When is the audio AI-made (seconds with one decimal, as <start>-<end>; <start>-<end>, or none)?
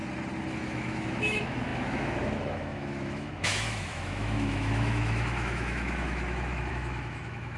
0.5-7.6